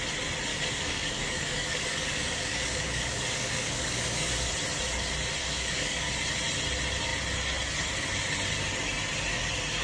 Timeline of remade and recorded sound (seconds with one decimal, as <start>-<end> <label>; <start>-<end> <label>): 0.0-0.5 recorded; 0.5-4.5 remade; 4.5-5.4 recorded; 5.4-6.1 remade; 6.1-9.8 recorded